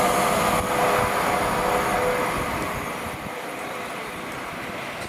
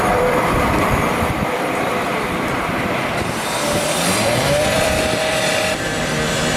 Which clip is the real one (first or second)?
first